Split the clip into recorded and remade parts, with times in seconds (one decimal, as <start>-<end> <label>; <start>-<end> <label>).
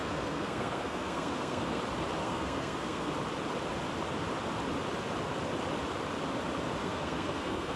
0.0-1.8 remade; 1.8-2.2 recorded; 2.2-3.1 remade; 3.1-6.8 recorded; 6.8-7.8 remade